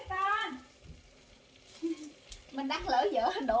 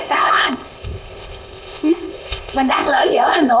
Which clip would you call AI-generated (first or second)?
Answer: second